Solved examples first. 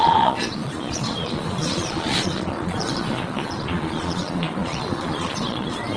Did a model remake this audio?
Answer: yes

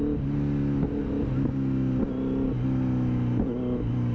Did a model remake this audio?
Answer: no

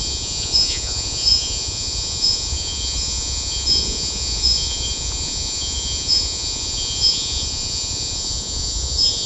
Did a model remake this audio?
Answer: yes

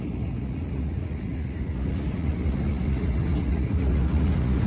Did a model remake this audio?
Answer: yes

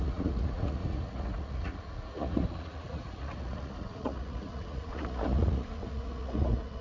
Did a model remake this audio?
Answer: yes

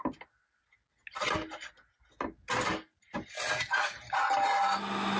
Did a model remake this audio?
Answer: no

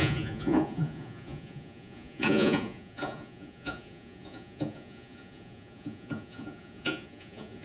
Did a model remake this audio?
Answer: yes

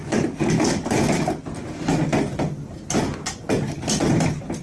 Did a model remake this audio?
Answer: no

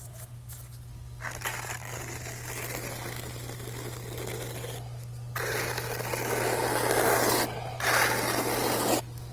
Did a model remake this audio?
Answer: no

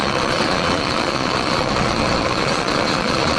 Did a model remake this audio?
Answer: yes